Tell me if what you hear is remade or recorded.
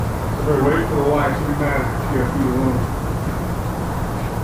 recorded